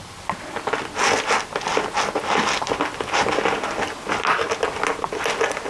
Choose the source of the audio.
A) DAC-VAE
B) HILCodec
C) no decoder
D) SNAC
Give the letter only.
C